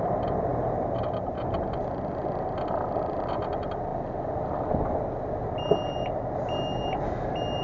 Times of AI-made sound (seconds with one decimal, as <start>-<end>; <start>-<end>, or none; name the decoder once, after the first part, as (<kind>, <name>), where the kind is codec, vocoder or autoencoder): none